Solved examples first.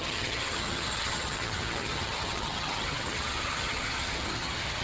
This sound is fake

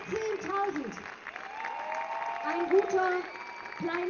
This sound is real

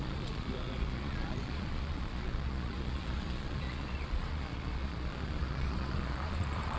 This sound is fake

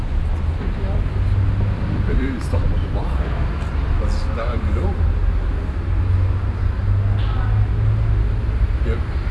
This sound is real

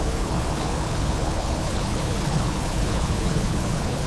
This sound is fake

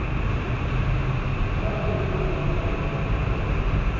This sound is real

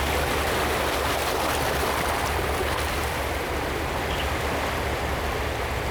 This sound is real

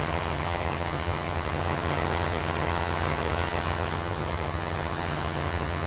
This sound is fake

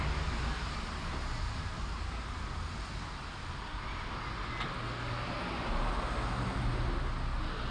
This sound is real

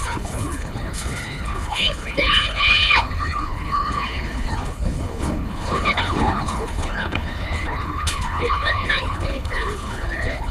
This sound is fake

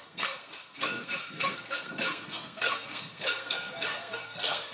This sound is fake